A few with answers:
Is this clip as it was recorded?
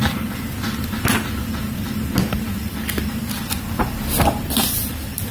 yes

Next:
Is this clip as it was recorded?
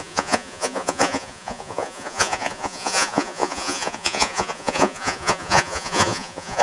no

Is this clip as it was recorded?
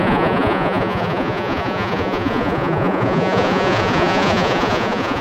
no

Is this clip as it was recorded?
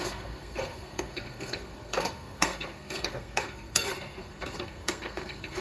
no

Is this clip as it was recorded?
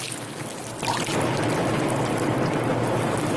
yes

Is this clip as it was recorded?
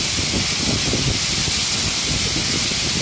yes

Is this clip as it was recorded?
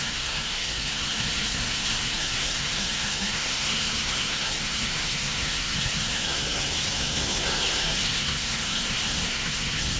no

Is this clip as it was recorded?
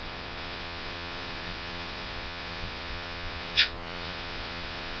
no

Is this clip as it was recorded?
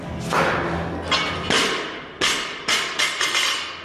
yes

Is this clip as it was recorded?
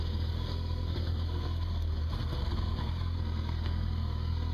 no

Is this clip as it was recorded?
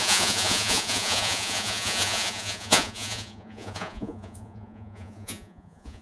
no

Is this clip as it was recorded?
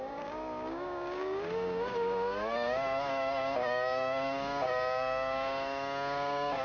no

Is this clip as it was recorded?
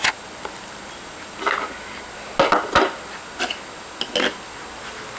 yes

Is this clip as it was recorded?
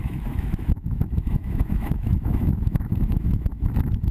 no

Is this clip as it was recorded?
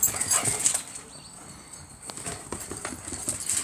yes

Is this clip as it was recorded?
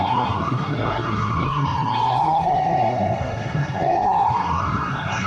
no